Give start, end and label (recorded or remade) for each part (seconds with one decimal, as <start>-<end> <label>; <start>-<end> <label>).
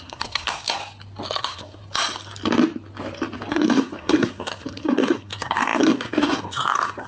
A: 0.0-0.8 remade; 0.8-1.4 recorded; 1.4-1.8 remade; 1.8-3.5 recorded; 3.5-7.1 remade